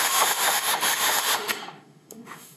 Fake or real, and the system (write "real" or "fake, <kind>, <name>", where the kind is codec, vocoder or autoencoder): fake, autoencoder, DAC-VAE